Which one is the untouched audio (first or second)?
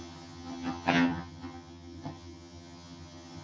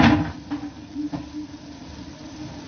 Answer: second